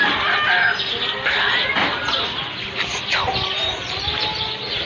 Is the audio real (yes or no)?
yes